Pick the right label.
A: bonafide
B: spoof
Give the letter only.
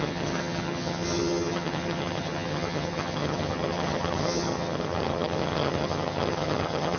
B